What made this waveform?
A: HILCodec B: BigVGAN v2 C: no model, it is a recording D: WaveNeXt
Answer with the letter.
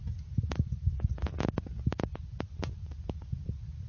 C